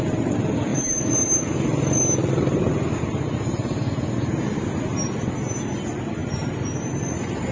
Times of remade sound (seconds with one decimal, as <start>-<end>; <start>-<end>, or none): 0.7-1.4; 2.2-3.8; 6.2-7.5